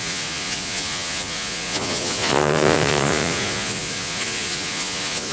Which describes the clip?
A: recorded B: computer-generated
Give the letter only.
B